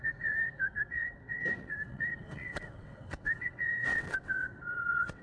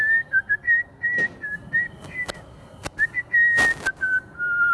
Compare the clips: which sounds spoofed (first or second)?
first